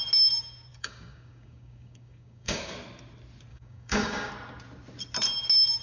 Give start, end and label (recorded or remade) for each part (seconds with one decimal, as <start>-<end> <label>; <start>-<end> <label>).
0.0-0.7 recorded; 0.7-2.7 remade; 2.7-3.5 recorded; 3.5-4.3 remade; 4.3-5.8 recorded